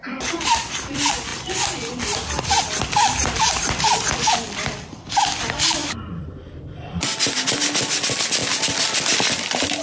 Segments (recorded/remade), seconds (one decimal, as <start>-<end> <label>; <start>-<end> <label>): 0.0-5.8 recorded; 5.8-7.0 remade; 7.0-9.8 recorded